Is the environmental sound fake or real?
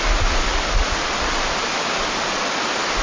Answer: real